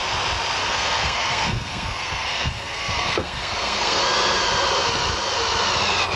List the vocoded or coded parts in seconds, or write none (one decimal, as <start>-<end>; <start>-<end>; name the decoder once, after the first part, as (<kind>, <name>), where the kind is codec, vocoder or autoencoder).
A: 0.6-4.0 (codec, SNAC)